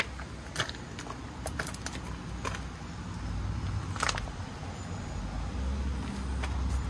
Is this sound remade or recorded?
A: recorded